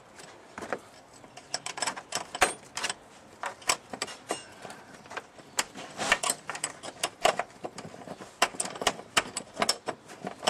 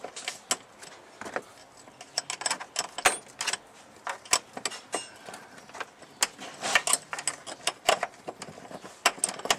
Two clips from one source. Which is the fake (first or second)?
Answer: first